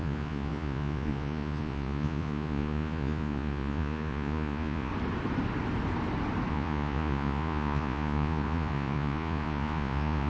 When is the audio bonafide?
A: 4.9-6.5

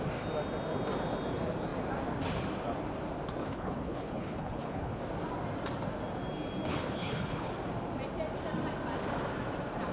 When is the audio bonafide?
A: 0.0-3.4; 5.0-6.7; 7.5-9.9

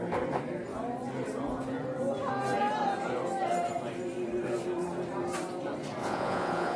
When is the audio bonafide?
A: 0.0-6.0